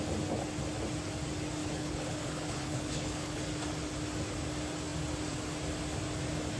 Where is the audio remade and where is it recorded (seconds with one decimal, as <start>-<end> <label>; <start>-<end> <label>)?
0.0-1.6 recorded; 1.6-3.4 remade; 3.4-6.6 recorded

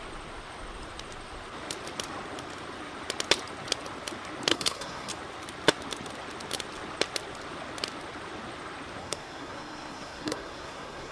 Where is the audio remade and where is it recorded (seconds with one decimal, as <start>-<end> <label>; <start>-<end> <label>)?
0.0-4.5 recorded; 4.5-5.1 remade; 5.1-9.0 recorded; 9.0-11.1 remade

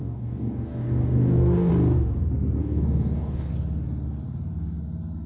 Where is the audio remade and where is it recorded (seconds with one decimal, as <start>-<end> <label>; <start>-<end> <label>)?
0.0-1.7 remade; 1.7-2.6 recorded; 2.6-3.5 remade; 3.5-5.3 recorded

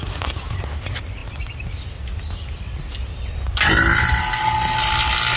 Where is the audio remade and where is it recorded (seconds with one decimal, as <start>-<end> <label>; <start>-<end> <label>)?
0.0-5.4 recorded

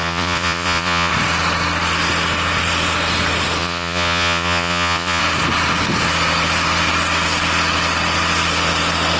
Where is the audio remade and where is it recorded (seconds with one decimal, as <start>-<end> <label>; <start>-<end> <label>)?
0.0-1.1 remade; 1.1-3.6 recorded; 3.6-5.2 remade; 5.2-9.2 recorded